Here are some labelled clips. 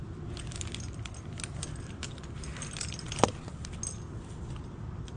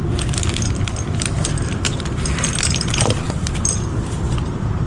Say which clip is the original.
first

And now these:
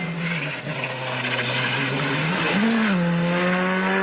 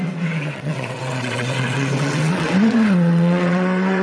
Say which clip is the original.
first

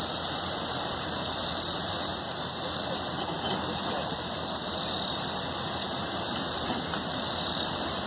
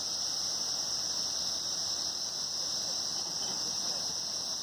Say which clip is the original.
second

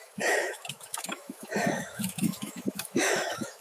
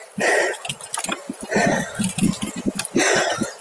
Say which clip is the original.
second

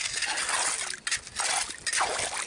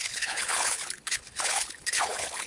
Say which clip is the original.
first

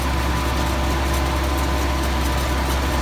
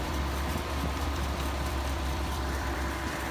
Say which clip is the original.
first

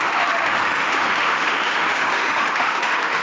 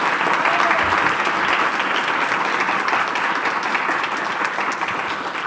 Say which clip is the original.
second